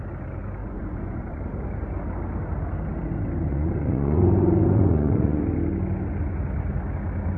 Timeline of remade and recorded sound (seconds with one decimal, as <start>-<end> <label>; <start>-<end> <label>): 0.0-0.6 recorded; 0.6-1.4 remade; 1.4-3.5 recorded; 3.5-5.4 remade; 5.4-7.4 recorded